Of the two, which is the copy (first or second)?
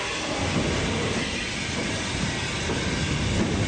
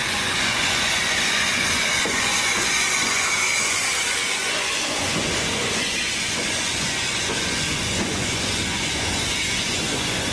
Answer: second